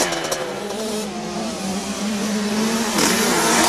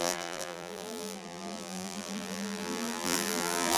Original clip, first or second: first